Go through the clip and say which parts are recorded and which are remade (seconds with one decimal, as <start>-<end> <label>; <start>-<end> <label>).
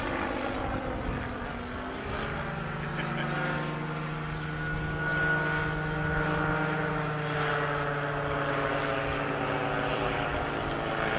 0.0-9.9 recorded; 9.9-10.4 remade; 10.4-11.2 recorded